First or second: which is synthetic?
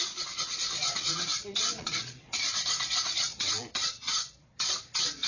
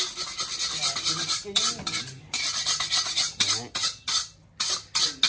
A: first